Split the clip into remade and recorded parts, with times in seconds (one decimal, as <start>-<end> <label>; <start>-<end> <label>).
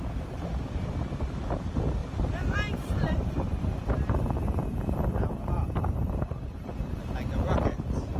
0.0-2.0 recorded; 2.0-6.2 remade; 6.2-8.2 recorded